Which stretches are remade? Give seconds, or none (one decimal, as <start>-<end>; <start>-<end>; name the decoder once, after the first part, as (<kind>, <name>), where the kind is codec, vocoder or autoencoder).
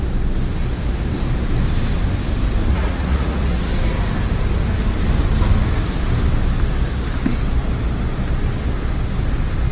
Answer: 2.7-3.7 (vocoder, Vocos)